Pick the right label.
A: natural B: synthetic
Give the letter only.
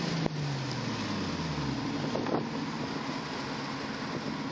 A